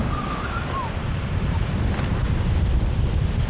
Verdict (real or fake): real